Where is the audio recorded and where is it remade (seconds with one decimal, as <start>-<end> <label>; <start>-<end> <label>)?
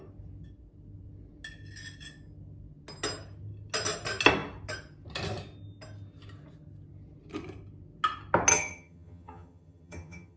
0.0-8.5 recorded; 8.5-10.4 remade